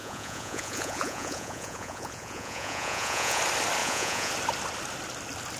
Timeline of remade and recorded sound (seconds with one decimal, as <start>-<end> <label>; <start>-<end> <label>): 0.0-3.4 remade; 3.4-3.8 recorded; 3.8-4.3 remade; 4.3-5.6 recorded